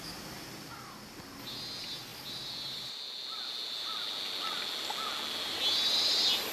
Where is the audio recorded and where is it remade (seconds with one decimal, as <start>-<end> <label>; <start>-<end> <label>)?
0.0-6.5 recorded